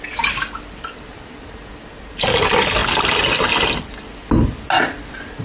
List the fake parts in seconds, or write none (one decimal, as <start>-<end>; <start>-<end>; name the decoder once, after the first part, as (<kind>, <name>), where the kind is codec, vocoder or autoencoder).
none